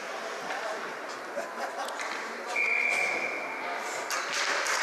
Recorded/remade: recorded